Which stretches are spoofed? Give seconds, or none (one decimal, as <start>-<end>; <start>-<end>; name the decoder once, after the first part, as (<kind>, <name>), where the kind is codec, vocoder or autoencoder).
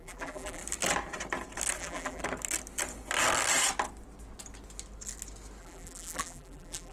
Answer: 0.0-0.6 (vocoder, BigVGAN v2); 1.8-2.2; 5.6-6.9